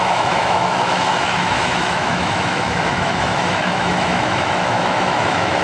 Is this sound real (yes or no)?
no